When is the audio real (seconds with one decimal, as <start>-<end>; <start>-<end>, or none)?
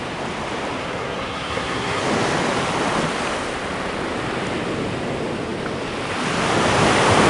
0.0-0.8; 2.0-7.3